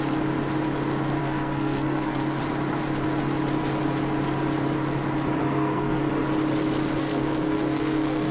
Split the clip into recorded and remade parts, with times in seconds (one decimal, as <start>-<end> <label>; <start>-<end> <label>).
0.0-1.2 recorded; 1.2-2.4 remade; 2.4-5.4 recorded; 5.4-6.1 remade; 6.1-7.0 recorded; 7.0-8.3 remade